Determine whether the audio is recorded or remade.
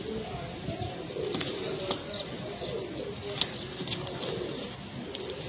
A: recorded